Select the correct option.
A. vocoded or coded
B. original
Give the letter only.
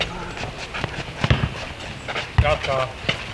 B